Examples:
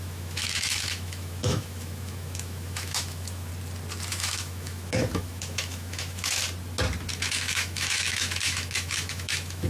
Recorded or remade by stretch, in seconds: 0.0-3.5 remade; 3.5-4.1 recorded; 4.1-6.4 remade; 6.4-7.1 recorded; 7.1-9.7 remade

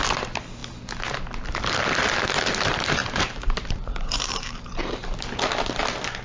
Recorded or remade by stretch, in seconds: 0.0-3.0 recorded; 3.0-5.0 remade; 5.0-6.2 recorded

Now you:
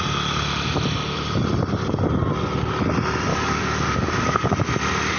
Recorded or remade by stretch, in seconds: 0.0-3.3 recorded; 3.3-4.5 remade; 4.5-5.2 recorded

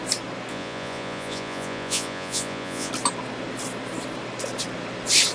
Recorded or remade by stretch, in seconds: 0.0-0.5 recorded; 0.5-2.9 remade; 2.9-5.3 recorded

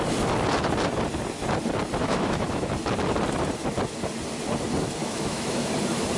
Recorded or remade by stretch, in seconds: 0.0-2.0 recorded; 2.0-2.7 remade; 2.7-5.0 recorded; 5.0-5.7 remade; 5.7-6.2 recorded

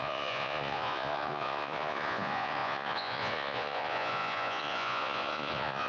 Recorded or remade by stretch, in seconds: 0.0-5.9 remade

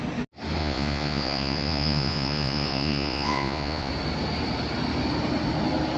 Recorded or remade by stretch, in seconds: 0.0-0.6 recorded; 0.6-3.9 remade; 3.9-6.0 recorded